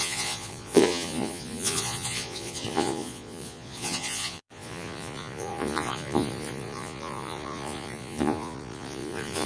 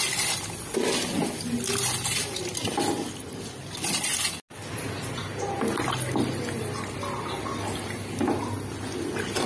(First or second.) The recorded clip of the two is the second